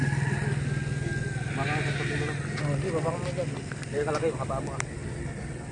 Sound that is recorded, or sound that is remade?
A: recorded